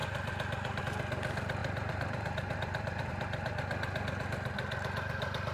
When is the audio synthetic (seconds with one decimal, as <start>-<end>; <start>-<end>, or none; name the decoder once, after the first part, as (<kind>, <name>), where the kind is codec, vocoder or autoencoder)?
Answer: 1.6-3.1 (vocoder, BigVGAN v2)